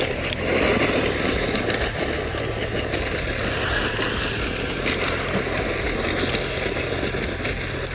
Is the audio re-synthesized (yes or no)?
no